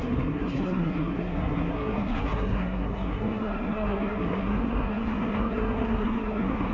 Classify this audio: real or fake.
fake